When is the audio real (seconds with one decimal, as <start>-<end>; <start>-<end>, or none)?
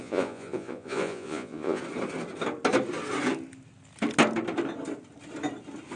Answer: 1.8-6.0